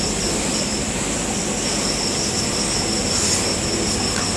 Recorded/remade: recorded